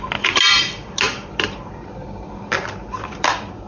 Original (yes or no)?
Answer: no